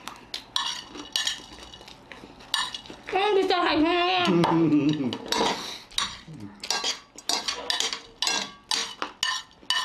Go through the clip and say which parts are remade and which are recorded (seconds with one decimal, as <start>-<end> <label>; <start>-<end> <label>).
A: 0.0-9.8 recorded